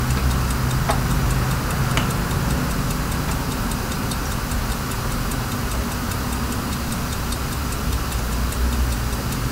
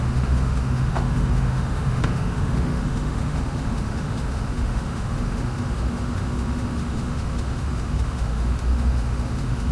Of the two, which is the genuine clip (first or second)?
first